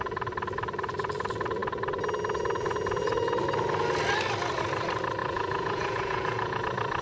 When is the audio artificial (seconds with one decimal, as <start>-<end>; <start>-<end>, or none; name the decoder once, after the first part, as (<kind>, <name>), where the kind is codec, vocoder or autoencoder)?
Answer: 5.2-6.6 (vocoder, Vocos)